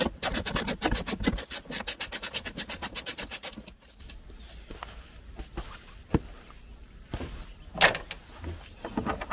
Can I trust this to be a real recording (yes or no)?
yes